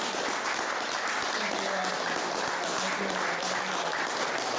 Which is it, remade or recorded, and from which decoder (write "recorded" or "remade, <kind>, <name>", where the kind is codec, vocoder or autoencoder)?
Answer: recorded